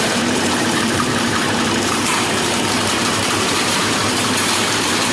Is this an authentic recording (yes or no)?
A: no